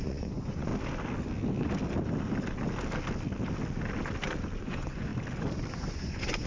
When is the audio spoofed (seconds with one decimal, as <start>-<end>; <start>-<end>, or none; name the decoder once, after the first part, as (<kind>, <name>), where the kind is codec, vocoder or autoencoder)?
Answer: 0.0-0.7 (vocoder, Vocos); 4.6-5.1; 5.7-6.5